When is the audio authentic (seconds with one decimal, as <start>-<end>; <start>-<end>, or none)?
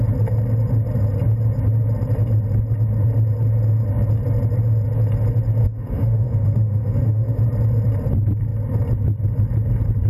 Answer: 0.0-5.6; 7.4-10.1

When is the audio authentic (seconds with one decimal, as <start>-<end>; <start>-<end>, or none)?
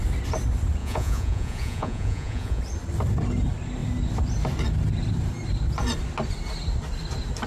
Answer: 0.0-0.8; 2.6-7.5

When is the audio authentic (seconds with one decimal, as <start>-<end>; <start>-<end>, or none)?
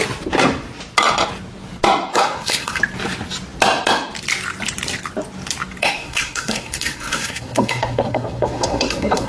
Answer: 0.0-2.1; 2.8-5.8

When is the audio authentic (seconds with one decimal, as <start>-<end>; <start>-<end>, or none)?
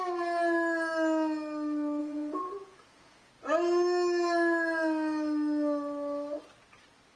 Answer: 0.0-2.0; 3.3-7.2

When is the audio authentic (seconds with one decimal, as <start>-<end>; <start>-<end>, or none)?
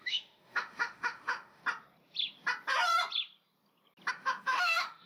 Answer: 1.6-4.1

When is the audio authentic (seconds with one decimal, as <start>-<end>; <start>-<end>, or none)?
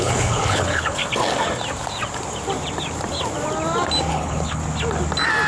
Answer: 1.0-4.1; 4.6-5.5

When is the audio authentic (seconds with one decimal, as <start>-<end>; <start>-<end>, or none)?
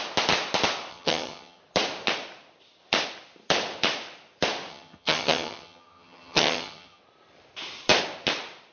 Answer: 0.0-0.9; 1.6-4.7; 7.0-8.7